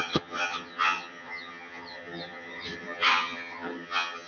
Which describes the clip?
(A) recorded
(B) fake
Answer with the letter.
B